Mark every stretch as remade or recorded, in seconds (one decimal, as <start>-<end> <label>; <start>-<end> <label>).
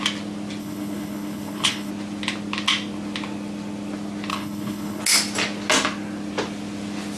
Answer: 0.0-0.6 recorded; 0.6-1.9 remade; 1.9-4.3 recorded; 4.3-5.0 remade; 5.0-7.2 recorded